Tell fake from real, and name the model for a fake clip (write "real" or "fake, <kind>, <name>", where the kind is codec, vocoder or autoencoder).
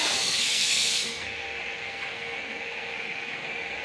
fake, codec, SNAC